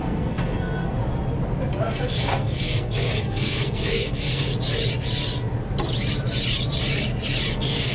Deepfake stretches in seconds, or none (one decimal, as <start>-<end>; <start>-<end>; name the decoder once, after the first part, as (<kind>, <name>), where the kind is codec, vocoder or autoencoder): 0.0-1.0 (codec, SNAC); 1.8-4.5; 7.5-7.9